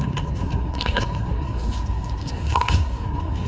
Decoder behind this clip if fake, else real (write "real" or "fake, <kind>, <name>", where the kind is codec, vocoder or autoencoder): fake, codec, SNAC